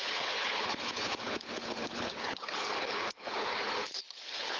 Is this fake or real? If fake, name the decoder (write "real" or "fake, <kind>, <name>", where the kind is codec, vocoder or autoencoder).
fake, codec, HILCodec